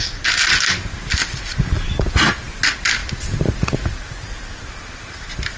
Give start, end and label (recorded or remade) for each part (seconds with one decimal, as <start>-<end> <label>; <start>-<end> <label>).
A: 0.0-5.6 recorded